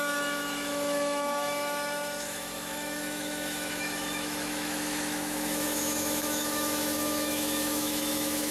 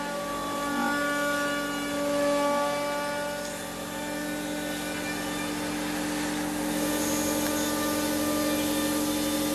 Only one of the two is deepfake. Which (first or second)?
first